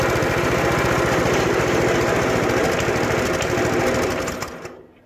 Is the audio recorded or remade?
recorded